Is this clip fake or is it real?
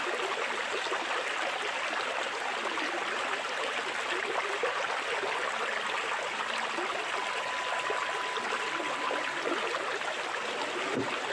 real